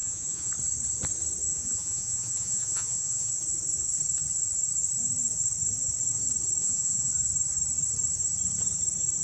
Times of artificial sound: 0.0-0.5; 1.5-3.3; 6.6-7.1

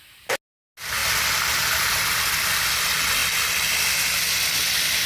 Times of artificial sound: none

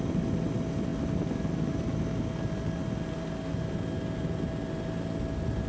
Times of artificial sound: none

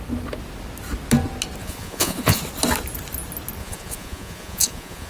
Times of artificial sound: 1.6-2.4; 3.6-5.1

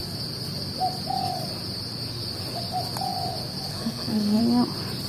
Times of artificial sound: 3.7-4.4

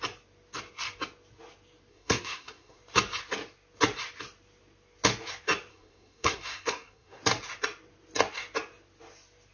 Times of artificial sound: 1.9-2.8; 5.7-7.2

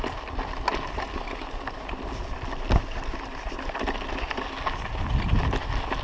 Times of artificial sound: none

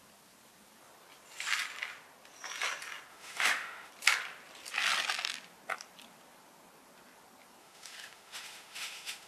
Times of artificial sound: 3.1-3.9; 7.6-9.3